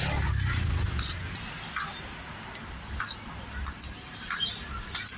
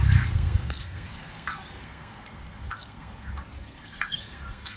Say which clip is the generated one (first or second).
second